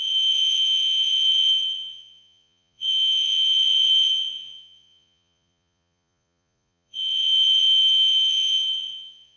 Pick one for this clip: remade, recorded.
remade